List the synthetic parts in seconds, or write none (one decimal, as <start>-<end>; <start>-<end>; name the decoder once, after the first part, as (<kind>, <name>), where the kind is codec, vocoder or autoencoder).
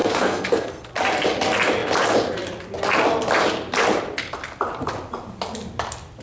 0.0-0.9 (codec, SNAC)